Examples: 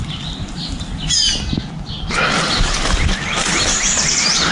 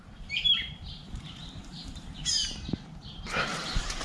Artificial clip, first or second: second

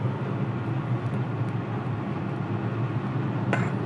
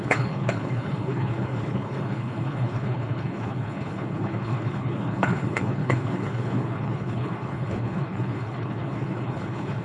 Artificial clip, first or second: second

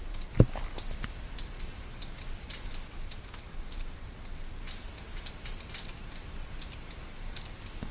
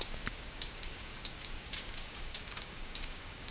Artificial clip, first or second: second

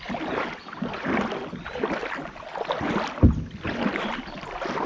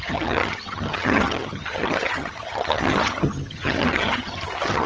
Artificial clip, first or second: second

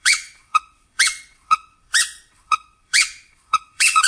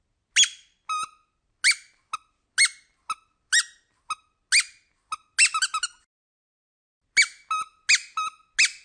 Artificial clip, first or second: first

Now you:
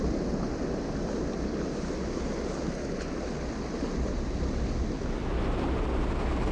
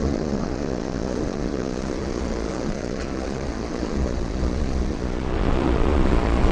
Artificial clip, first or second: second